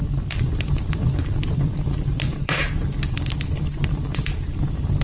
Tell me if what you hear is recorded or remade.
remade